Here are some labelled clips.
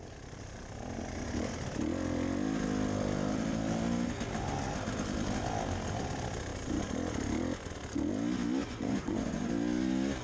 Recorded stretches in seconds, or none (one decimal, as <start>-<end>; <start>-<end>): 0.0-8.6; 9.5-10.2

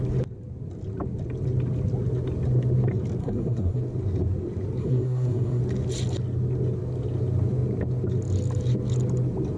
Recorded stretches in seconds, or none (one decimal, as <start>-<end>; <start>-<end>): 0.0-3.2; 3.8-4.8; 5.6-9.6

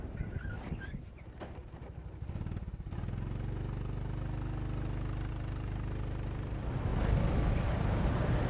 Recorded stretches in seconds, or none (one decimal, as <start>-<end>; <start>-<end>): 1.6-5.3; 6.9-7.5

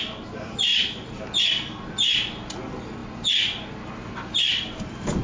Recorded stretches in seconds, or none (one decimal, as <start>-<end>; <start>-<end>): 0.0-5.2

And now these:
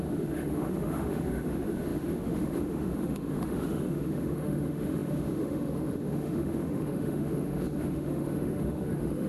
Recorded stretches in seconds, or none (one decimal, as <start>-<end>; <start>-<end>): none

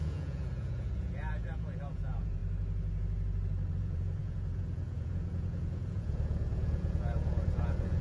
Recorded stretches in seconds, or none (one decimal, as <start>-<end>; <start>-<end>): 2.4-3.7